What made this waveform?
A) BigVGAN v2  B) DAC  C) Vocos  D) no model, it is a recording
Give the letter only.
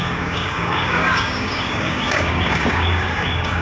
B